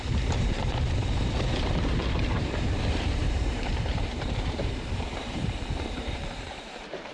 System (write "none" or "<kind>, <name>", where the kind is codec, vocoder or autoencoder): vocoder, BigVGAN v2